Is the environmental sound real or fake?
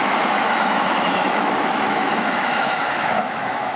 fake